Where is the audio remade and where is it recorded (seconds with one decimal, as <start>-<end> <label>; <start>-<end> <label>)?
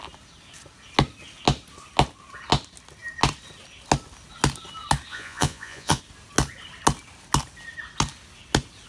0.0-5.1 recorded; 5.1-6.0 remade; 6.0-8.9 recorded